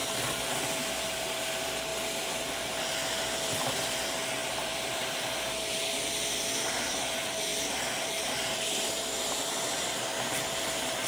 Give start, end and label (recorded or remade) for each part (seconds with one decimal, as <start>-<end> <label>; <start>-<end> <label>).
0.0-1.2 recorded; 1.2-11.1 remade